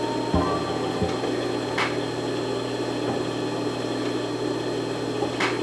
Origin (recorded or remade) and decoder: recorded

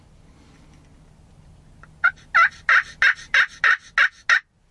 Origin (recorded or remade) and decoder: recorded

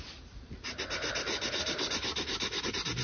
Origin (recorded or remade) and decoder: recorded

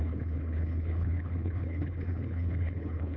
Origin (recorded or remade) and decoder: remade, codec, HILCodec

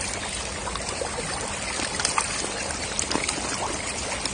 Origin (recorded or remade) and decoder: recorded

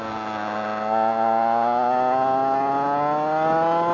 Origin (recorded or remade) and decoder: recorded